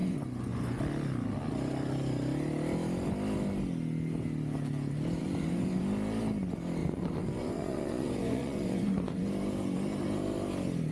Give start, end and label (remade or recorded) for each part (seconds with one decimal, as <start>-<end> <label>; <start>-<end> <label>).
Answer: 0.0-0.8 remade; 0.8-5.2 recorded; 5.2-5.8 remade; 5.8-6.8 recorded; 6.8-9.3 remade; 9.3-10.9 recorded